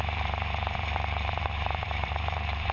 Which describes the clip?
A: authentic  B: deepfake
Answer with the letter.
B